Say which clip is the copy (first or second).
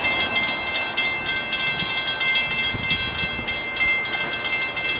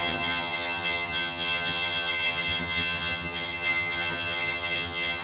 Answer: second